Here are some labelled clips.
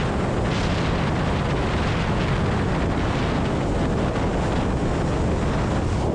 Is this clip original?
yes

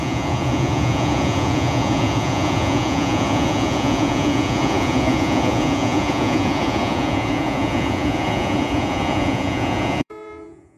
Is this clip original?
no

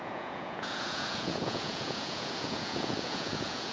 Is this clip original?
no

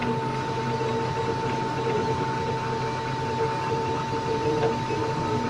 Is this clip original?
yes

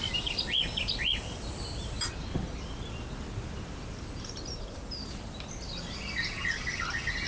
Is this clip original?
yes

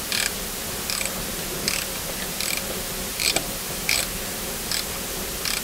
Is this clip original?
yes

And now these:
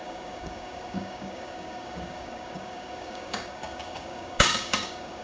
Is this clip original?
no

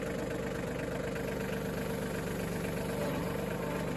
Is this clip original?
yes